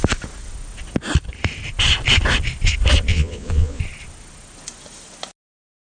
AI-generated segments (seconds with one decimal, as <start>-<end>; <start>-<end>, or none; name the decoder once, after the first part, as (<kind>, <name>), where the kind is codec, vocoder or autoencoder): 3.1-3.8 (vocoder, Vocos)